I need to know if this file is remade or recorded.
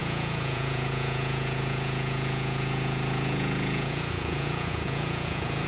remade